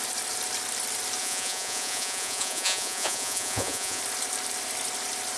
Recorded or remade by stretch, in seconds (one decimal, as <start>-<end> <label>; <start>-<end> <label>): 0.0-1.2 recorded; 1.2-4.0 remade; 4.0-5.4 recorded